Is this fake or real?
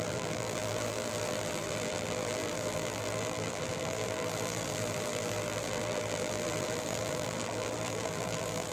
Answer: fake